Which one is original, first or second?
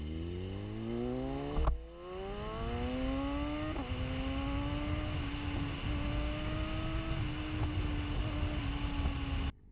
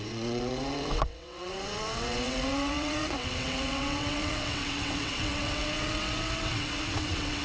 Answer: first